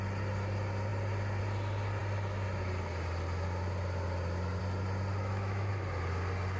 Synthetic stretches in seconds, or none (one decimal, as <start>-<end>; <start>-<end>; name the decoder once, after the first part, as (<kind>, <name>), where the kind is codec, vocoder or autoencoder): 5.1-5.7 (autoencoder, DAC-VAE)